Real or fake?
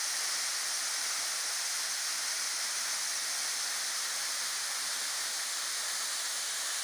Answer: real